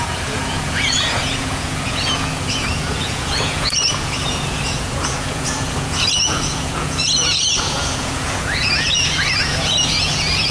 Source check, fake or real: fake